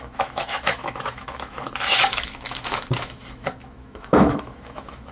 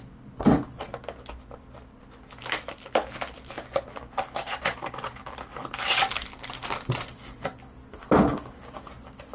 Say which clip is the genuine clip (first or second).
second